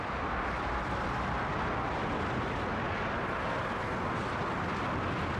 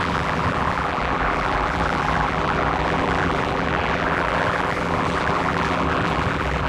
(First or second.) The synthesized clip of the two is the second